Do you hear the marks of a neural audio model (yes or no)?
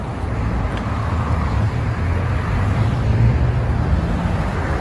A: no